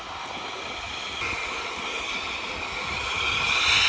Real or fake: real